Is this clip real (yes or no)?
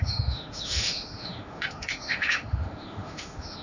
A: no